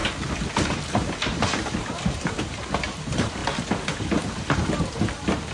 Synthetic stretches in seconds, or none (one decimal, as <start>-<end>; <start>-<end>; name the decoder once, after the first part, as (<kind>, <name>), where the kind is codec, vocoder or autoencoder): 0.5-3.4 (vocoder, BigVGAN v2); 4.8-5.5